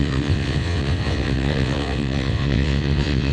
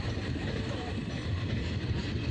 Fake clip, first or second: first